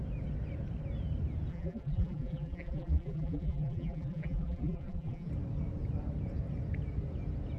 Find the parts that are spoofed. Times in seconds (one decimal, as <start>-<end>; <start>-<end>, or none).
1.5-5.3